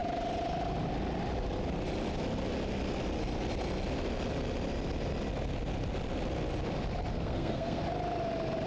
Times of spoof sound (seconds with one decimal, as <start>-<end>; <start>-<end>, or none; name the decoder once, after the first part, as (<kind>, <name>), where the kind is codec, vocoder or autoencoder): 7.1-7.8 (codec, SNAC)